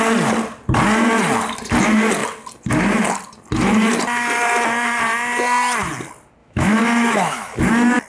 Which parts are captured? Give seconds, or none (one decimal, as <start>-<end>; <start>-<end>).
0.0-6.4; 7.6-8.1